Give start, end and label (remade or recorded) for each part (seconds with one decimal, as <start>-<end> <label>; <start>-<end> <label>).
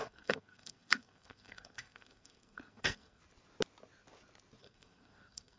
0.0-3.2 remade; 3.2-4.6 recorded; 4.6-5.6 remade